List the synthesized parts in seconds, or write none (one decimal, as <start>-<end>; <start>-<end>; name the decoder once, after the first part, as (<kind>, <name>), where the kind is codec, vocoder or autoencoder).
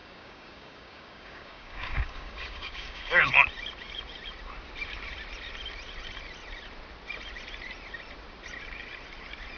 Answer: 0.0-3.3 (codec, DAC)